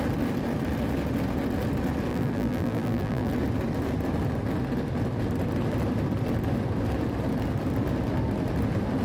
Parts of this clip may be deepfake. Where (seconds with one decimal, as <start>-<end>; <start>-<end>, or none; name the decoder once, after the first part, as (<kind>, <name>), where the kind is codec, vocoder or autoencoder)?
2.1-3.3 (vocoder, BigVGAN v2)